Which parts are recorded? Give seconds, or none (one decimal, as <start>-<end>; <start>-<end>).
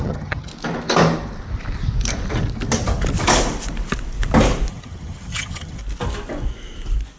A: 0.5-4.7; 5.8-7.2